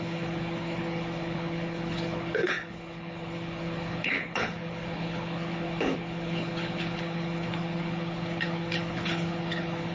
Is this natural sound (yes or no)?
no